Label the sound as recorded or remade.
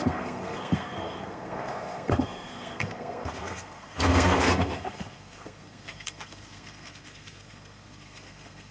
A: remade